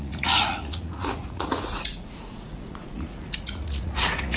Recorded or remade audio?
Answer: remade